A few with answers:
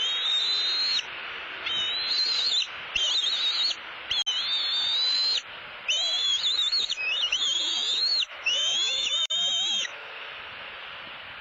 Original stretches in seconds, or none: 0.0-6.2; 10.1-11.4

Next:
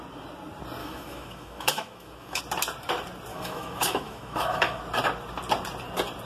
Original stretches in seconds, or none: 0.0-0.8; 2.4-3.3; 4.8-6.3

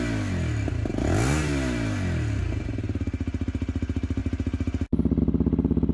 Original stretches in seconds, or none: 0.0-5.9

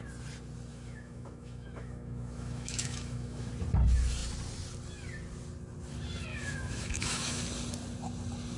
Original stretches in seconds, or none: 0.0-0.7; 3.5-6.3; 7.4-8.6

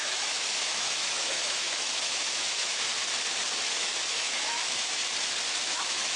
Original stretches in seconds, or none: 2.9-3.7; 5.0-5.7